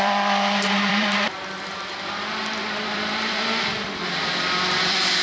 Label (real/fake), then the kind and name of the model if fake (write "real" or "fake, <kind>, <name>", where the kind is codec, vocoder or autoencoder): fake, vocoder, BigVGAN v2